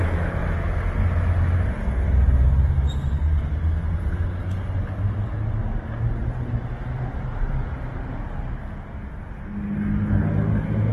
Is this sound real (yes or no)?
yes